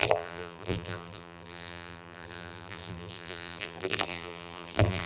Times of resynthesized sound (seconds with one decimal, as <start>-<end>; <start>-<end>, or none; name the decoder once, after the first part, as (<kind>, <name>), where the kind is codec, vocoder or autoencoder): 0.0-5.1 (vocoder, BigVGAN v2)